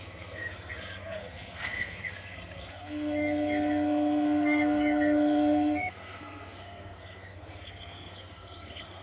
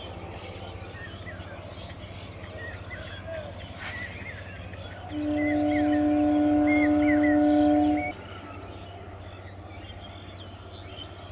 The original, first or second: second